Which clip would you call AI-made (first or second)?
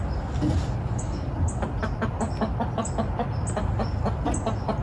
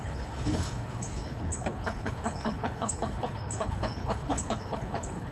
second